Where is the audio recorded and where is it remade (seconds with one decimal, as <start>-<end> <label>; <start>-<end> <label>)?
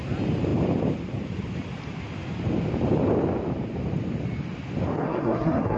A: 0.0-5.0 recorded; 5.0-5.8 remade